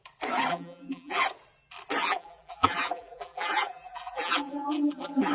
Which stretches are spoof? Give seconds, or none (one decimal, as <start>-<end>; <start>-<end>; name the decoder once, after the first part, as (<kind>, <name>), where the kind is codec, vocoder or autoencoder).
0.5-1.2 (vocoder, BigVGAN v2); 2.0-5.3